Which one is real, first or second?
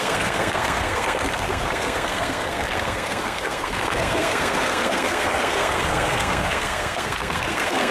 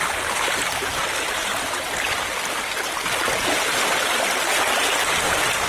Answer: second